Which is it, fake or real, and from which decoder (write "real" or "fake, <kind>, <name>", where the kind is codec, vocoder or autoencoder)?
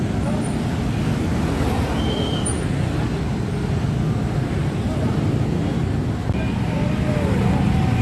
real